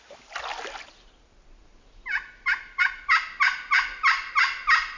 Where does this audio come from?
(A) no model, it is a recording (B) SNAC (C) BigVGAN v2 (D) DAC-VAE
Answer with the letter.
A